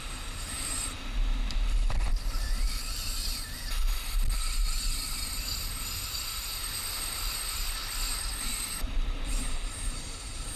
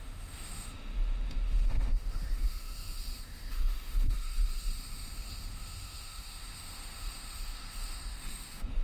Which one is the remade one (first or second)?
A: second